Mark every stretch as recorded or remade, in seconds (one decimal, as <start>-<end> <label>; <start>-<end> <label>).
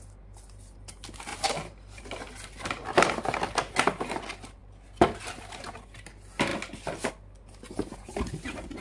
0.0-1.3 recorded; 1.3-2.0 remade; 2.0-8.8 recorded